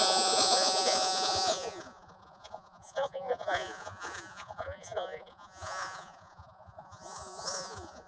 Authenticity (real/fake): fake